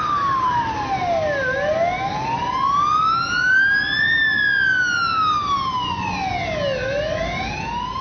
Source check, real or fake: real